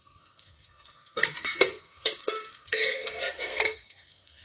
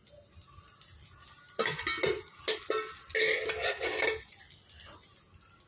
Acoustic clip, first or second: second